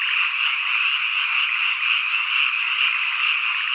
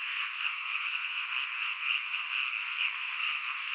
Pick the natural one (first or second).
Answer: first